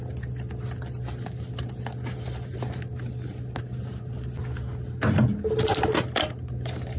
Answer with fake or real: real